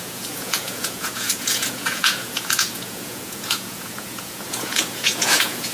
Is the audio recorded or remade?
remade